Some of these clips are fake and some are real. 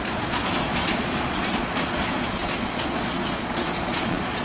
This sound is fake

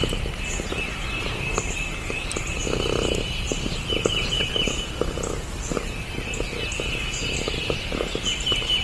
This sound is real